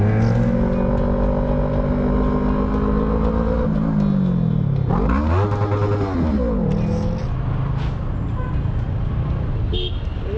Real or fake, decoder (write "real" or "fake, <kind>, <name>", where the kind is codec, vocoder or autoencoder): real